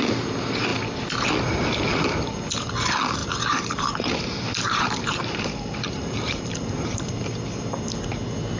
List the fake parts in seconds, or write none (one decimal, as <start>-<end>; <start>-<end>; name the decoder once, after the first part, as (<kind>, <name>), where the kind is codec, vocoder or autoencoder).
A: 3.2-7.1 (vocoder, BigVGAN v2)